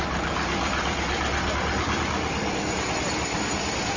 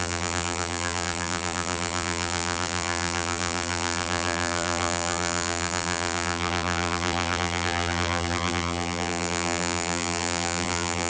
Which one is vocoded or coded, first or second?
second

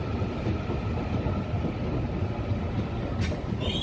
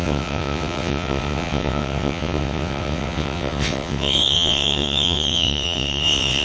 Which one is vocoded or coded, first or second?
second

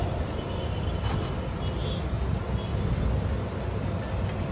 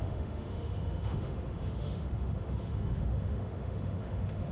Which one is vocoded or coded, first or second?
second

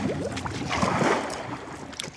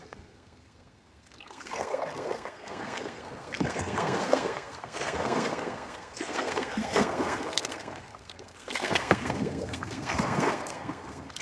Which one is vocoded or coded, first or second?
second